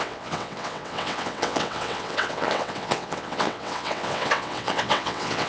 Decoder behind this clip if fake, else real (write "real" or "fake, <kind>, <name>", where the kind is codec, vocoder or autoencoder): fake, vocoder, WaveNeXt